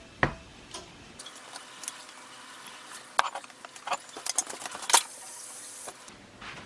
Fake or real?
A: real